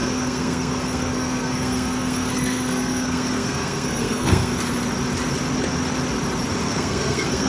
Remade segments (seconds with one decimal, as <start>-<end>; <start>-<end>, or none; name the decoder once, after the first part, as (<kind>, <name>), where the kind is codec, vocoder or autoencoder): 0.0-4.5 (codec, SNAC); 6.6-7.5